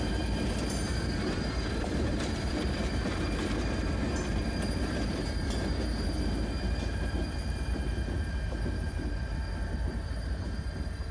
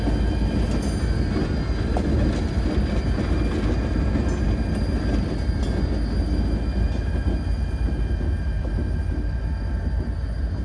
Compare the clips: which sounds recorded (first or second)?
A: second